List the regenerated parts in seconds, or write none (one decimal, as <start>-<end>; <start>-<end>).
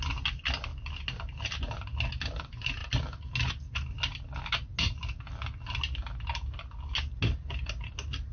none